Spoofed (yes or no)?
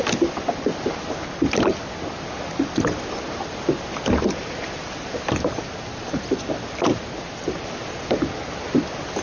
no